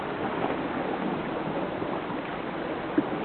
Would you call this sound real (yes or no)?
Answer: yes